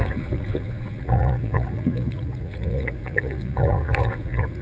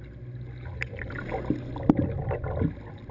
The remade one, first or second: first